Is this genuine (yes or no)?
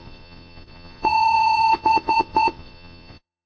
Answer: no